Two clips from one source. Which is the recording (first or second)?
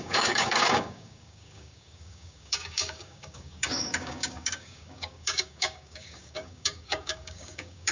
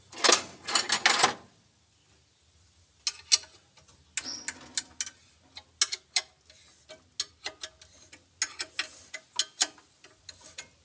second